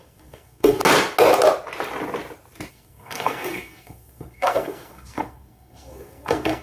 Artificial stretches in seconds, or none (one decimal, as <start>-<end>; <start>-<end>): 0.0-0.8; 2.7-6.6